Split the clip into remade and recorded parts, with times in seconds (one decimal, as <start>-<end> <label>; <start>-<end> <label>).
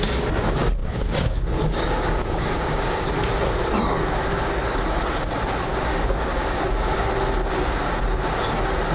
0.0-0.8 recorded; 0.8-3.1 remade; 3.1-5.7 recorded; 5.7-7.0 remade; 7.0-8.9 recorded